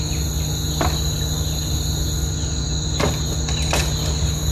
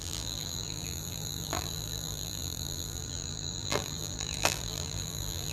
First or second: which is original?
first